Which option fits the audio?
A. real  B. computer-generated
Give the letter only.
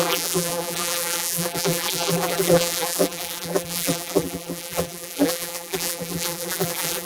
B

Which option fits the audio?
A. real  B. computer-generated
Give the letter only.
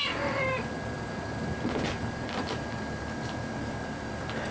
B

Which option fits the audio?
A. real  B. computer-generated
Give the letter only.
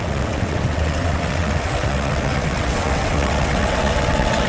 B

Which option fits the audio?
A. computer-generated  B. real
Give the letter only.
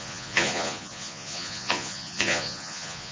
A